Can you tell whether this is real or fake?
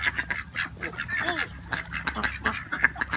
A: real